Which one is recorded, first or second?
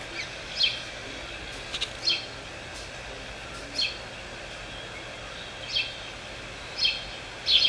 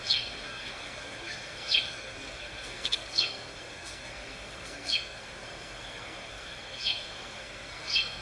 first